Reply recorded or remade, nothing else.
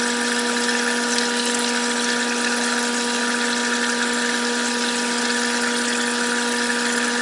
recorded